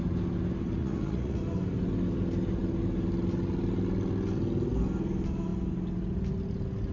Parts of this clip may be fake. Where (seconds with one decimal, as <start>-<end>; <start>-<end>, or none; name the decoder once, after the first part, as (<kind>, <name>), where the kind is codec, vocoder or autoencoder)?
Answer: 0.8-1.4 (vocoder, Vocos)